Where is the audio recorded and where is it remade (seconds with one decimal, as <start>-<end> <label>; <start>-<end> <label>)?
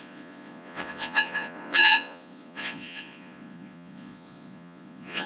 0.0-5.3 remade